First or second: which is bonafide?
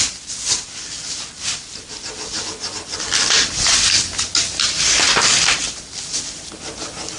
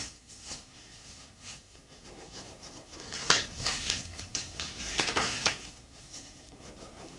first